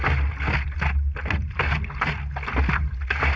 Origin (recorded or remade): recorded